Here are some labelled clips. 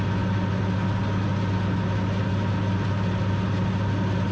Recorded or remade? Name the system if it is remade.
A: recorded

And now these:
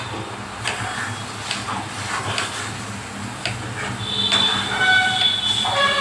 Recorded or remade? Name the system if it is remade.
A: recorded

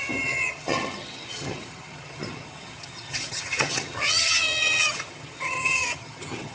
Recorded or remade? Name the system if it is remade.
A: remade, vocoder, HiFi-GAN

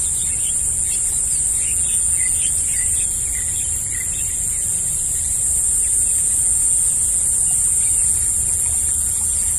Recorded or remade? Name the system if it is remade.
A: recorded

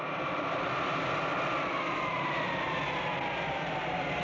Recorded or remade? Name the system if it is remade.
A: recorded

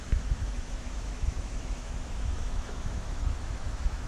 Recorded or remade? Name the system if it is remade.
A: remade, autoencoder, DAC-VAE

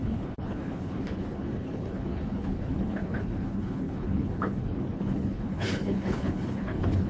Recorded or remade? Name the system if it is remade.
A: remade, codec, HILCodec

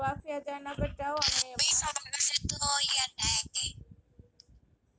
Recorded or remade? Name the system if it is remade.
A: recorded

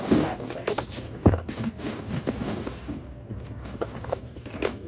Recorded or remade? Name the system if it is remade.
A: remade, codec, DAC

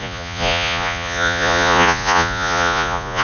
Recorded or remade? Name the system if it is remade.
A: remade, vocoder, Vocos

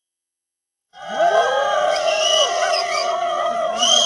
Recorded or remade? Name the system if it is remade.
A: remade, vocoder, WaveNeXt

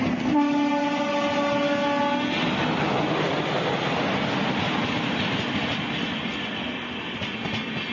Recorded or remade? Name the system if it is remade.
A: recorded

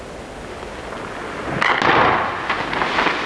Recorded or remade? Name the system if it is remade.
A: recorded